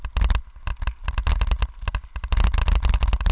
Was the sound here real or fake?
real